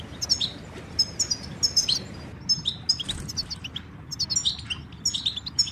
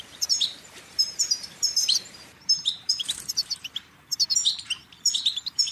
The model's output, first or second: second